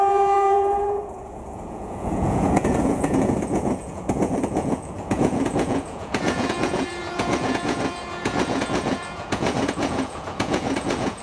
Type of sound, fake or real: fake